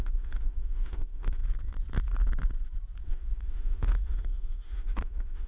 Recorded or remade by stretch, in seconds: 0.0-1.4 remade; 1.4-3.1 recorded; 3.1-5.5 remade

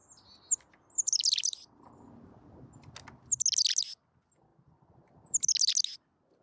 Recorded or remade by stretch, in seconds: 0.0-6.4 recorded

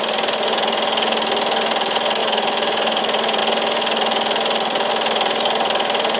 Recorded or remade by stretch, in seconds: 0.0-2.2 recorded; 2.2-3.0 remade; 3.0-6.2 recorded

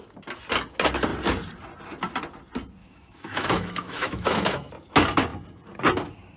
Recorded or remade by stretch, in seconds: 0.0-2.8 recorded; 2.8-4.7 remade; 4.7-6.4 recorded

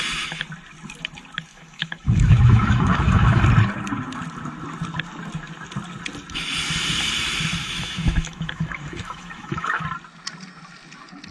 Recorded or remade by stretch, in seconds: 0.0-1.5 recorded; 1.5-3.4 remade; 3.4-7.6 recorded; 7.6-9.8 remade; 9.8-11.3 recorded

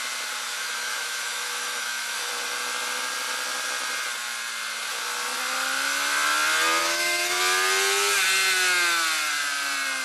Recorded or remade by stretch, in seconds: 0.0-0.5 recorded; 0.5-2.3 remade; 2.3-6.8 recorded; 6.8-7.4 remade; 7.4-10.0 recorded

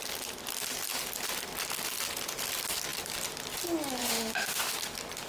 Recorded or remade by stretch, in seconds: 0.0-4.0 recorded; 4.0-4.7 remade; 4.7-5.3 recorded